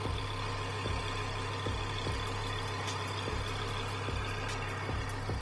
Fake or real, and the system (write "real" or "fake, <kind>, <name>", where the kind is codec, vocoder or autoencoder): real